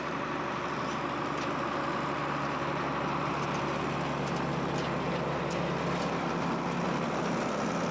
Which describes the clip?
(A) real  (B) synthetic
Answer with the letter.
A